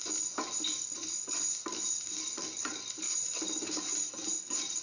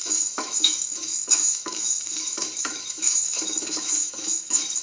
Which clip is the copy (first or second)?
second